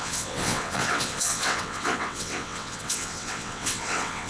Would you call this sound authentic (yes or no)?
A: no